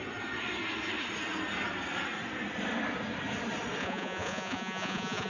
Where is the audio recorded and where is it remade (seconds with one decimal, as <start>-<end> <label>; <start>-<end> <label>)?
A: 0.0-3.8 recorded; 3.8-5.3 remade